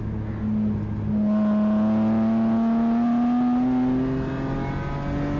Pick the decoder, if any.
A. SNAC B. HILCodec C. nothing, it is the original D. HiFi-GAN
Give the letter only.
C